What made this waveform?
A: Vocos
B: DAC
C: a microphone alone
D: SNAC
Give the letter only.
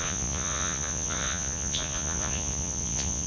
A